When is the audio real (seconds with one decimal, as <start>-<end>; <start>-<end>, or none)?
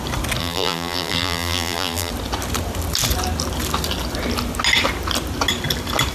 0.0-0.4; 2.1-6.1